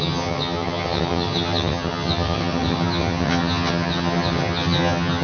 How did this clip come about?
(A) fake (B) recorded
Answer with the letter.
A